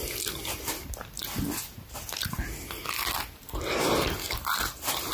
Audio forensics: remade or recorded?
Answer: recorded